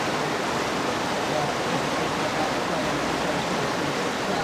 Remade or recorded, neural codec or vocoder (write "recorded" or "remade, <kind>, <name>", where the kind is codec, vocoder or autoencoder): recorded